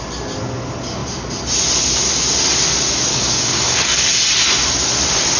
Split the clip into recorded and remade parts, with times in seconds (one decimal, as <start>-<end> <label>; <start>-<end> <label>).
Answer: 0.0-3.1 recorded; 3.1-4.1 remade; 4.1-5.4 recorded